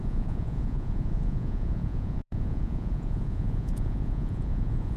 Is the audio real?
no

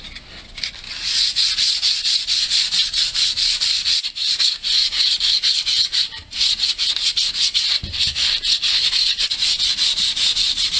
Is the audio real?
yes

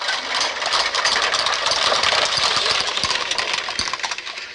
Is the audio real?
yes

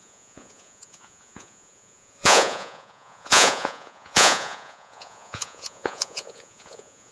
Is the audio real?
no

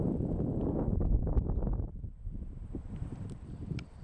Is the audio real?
yes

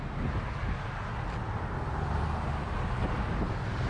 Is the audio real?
yes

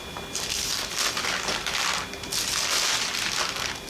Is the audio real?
yes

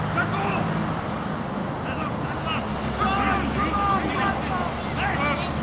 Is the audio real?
yes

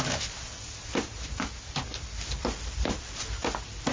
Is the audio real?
yes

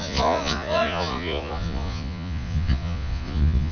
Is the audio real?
no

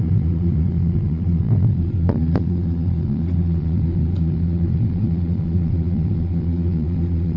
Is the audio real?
no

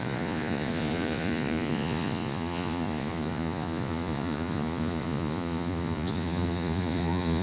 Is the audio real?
no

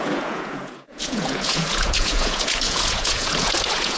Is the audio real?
no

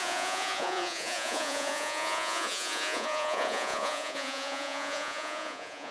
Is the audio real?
no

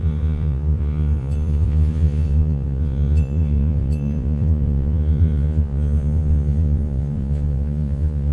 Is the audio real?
no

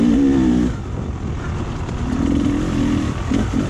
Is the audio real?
yes